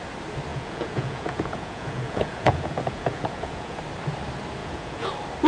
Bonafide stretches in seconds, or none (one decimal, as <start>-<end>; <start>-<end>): 0.0-0.5; 3.8-4.6; 5.1-5.5